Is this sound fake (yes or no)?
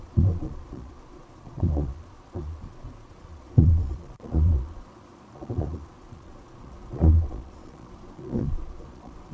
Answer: yes